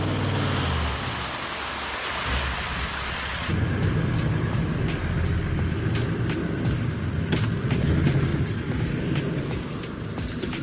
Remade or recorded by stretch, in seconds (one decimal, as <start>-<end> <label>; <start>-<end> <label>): 0.0-8.3 recorded; 8.3-9.6 remade; 9.6-10.6 recorded